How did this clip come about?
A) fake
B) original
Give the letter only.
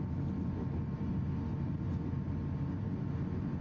B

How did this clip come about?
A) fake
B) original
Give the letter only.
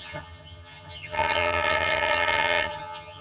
A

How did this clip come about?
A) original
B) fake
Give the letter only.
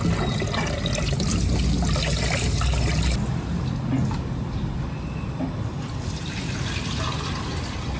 A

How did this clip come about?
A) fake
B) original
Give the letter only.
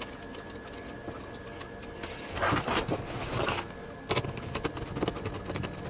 B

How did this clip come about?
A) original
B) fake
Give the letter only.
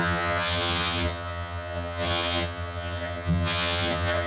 B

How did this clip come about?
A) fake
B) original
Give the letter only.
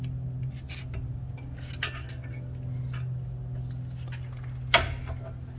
B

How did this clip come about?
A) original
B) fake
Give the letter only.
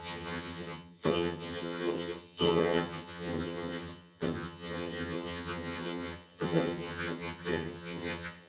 B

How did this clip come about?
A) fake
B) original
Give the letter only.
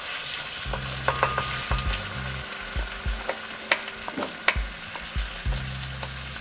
B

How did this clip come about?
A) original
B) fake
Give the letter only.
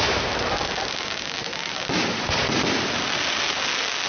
A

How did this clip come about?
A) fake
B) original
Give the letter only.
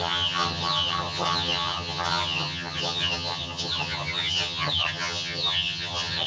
A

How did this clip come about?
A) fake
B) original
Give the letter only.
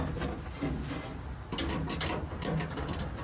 B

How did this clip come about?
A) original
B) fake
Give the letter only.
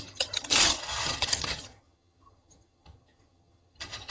B